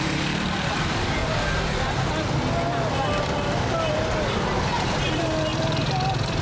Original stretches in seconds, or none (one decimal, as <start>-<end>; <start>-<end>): 1.2-4.6